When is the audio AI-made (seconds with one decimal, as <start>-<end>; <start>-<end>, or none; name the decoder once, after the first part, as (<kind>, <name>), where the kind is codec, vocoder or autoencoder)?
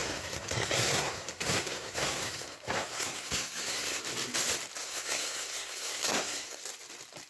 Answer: 0.0-4.0 (codec, SNAC); 4.8-6.6